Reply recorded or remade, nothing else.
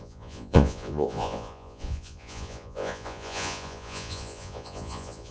remade